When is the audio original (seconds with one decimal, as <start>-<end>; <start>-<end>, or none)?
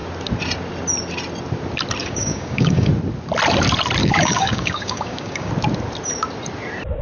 0.0-2.0; 2.9-4.0; 5.5-7.0